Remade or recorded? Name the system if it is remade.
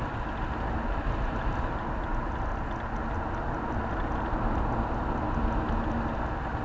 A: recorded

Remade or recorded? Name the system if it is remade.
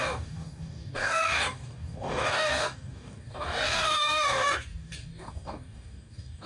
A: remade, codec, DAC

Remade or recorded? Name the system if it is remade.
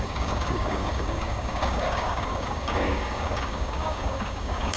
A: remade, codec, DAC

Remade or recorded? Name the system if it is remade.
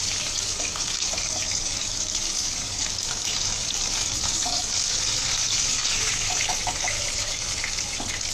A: remade, codec, DAC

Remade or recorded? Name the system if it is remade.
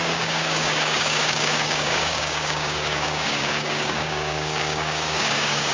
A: remade, codec, DAC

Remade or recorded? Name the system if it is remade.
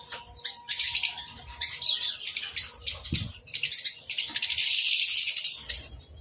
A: recorded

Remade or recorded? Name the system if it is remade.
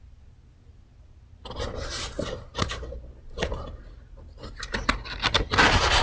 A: recorded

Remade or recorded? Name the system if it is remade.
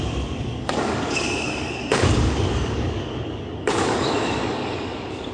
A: remade, codec, DAC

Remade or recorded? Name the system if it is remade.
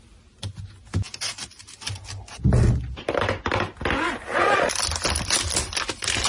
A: recorded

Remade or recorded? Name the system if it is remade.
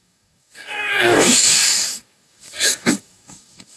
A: remade, codec, DAC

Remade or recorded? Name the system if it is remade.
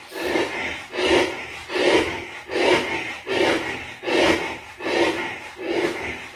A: recorded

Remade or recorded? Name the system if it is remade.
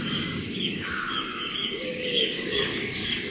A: remade, codec, DAC